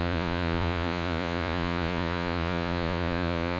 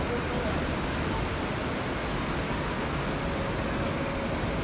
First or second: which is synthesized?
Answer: first